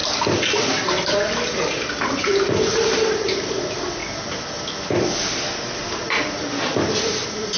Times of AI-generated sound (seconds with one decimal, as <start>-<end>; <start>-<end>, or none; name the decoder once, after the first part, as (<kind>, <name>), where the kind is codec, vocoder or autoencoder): 0.7-4.0 (vocoder, BigVGAN v2); 7.1-7.6